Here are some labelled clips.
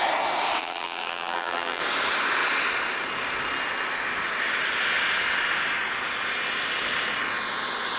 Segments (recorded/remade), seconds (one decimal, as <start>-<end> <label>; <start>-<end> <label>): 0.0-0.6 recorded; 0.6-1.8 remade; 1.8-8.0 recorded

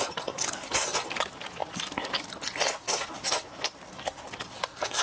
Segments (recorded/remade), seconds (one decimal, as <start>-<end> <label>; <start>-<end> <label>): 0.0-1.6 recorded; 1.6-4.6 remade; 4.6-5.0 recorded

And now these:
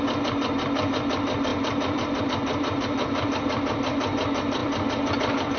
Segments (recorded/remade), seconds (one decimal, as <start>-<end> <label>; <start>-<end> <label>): 0.0-5.6 remade

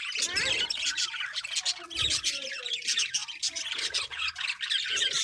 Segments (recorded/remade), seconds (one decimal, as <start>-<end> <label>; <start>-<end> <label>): 0.0-5.2 recorded

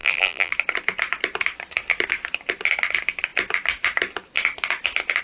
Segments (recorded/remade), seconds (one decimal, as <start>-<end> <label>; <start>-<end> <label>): 0.0-0.5 remade; 0.5-5.2 recorded

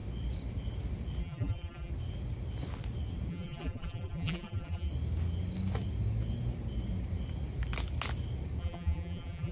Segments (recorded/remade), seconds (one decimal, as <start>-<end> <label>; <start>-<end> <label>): 0.0-1.2 recorded; 1.2-1.9 remade; 1.9-3.3 recorded; 3.3-4.9 remade; 4.9-8.6 recorded; 8.6-9.5 remade